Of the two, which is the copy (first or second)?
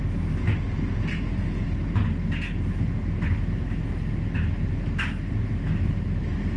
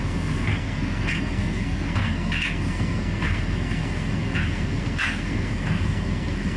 second